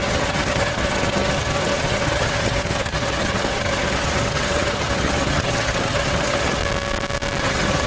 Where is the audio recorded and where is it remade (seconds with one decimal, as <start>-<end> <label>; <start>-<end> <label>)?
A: 0.0-6.6 remade; 6.6-7.4 recorded; 7.4-7.9 remade